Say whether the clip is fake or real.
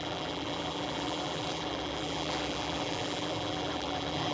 fake